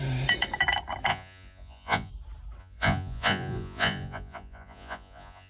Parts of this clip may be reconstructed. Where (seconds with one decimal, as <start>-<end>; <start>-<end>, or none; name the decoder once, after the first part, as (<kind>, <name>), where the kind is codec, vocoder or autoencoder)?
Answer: 1.1-2.1 (vocoder, Vocos); 2.6-5.5